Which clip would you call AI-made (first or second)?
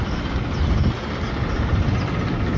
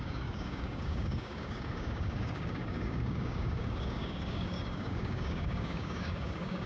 second